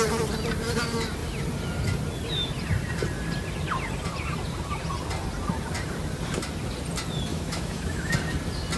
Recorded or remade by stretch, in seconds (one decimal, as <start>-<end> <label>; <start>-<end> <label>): 0.0-7.3 recorded; 7.3-8.1 remade; 8.1-8.8 recorded